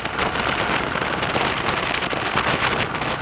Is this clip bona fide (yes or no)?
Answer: yes